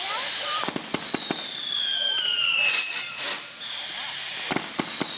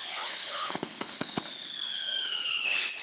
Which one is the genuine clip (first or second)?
first